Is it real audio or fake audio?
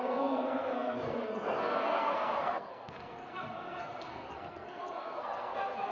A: fake